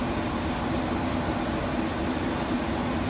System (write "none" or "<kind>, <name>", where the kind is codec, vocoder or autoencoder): none